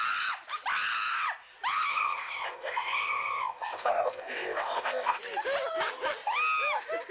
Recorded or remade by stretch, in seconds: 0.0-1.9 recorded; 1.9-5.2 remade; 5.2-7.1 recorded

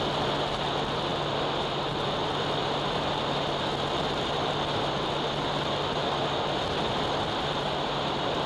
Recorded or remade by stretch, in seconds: 0.0-8.5 recorded

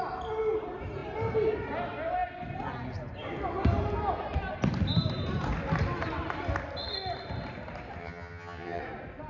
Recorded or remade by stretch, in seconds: 0.0-8.0 recorded; 8.0-8.8 remade; 8.8-9.3 recorded

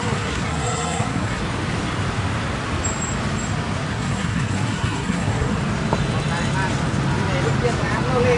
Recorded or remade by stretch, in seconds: 0.0-1.4 remade; 1.4-3.9 recorded; 3.9-5.6 remade; 5.6-8.4 recorded

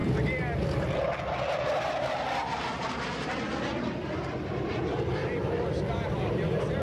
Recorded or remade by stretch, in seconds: 0.0-6.8 recorded

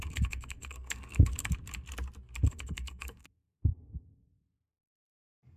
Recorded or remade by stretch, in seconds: 0.0-1.3 remade; 1.3-2.5 recorded; 2.5-5.6 remade

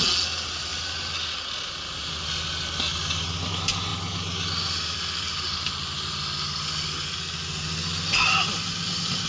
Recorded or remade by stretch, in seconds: 0.0-9.3 recorded